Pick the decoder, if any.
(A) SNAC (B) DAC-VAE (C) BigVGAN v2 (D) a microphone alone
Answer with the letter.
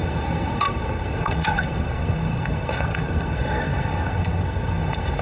A